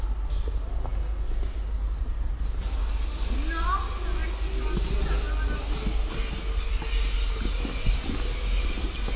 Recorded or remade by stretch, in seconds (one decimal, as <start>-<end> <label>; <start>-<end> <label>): 0.0-9.2 recorded